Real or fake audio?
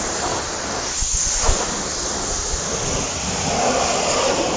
real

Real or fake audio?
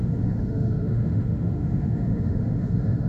fake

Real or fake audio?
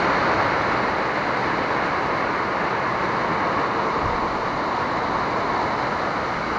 real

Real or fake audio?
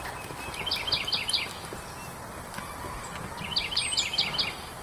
real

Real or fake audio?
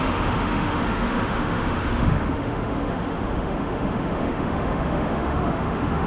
fake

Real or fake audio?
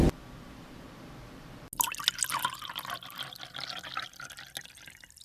real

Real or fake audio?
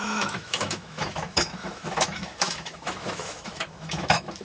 fake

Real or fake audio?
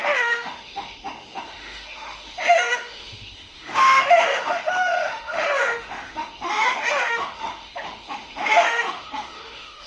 fake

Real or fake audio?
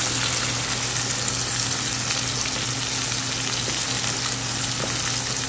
real